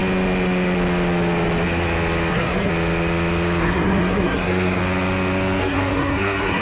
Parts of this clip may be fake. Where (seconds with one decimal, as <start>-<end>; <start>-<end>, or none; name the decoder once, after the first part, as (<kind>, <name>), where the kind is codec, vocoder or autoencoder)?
2.3-2.7 (codec, SNAC); 3.6-4.8; 5.6-6.6